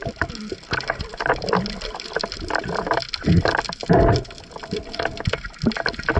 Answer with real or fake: real